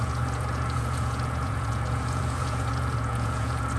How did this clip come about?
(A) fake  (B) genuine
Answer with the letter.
A